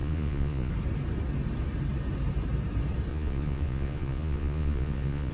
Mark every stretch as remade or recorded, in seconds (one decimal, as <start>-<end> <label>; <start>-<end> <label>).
0.0-0.7 remade; 0.7-3.1 recorded; 3.1-5.3 remade